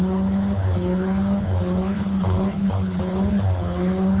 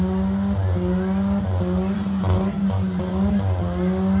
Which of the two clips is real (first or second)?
second